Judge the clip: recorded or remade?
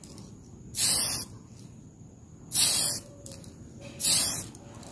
recorded